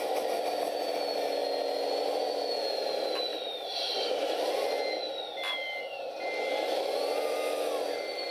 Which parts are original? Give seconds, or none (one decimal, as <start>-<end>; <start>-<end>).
0.0-3.3; 4.5-8.3